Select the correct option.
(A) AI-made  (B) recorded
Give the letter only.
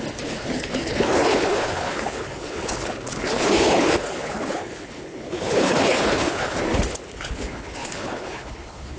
A